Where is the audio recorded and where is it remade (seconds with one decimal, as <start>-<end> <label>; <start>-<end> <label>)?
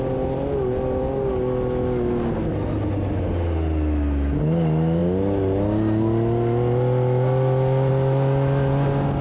0.0-9.2 recorded